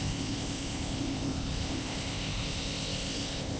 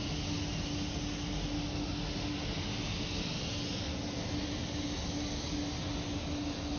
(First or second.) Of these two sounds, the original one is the second